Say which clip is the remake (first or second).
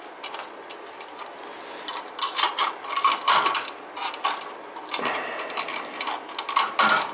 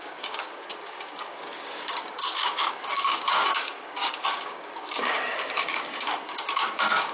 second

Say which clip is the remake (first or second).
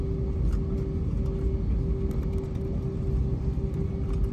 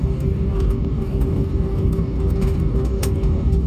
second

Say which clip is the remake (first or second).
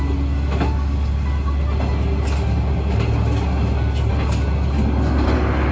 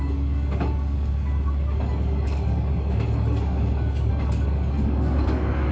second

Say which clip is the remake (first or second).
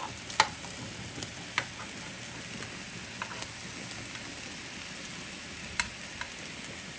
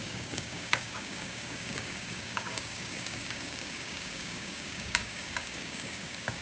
second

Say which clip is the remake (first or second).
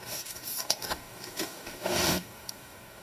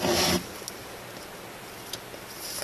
first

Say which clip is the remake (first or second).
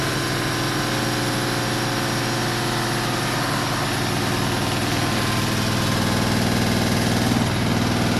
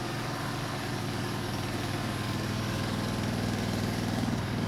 second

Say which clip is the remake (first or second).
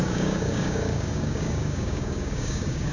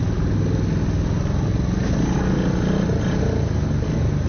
first